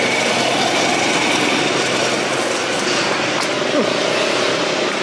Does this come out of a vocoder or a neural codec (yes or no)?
no